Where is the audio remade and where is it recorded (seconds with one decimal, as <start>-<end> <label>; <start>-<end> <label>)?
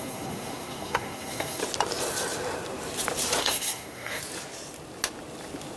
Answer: 0.0-1.6 remade; 1.6-3.4 recorded; 3.4-4.2 remade; 4.2-5.8 recorded